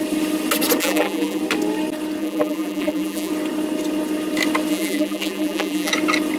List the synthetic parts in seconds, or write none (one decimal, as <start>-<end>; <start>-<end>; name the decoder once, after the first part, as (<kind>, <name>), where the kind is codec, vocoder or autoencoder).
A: 0.8-1.4 (vocoder, BigVGAN v2); 2.2-3.3; 4.7-5.9